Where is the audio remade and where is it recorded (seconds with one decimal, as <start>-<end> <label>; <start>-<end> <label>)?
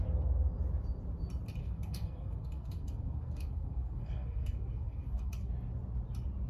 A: 0.0-1.6 recorded; 1.6-5.5 remade; 5.5-6.5 recorded